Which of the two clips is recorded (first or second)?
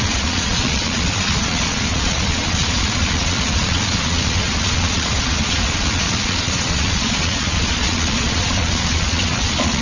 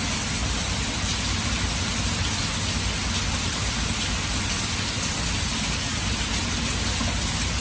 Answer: second